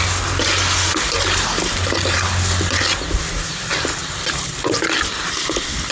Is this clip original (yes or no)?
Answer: yes